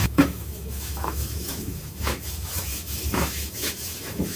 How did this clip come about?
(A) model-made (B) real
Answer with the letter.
A